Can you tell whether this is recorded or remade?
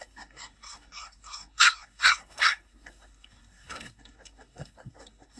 remade